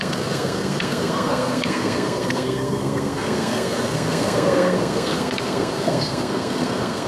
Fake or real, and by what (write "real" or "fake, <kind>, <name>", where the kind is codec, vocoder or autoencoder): fake, codec, SNAC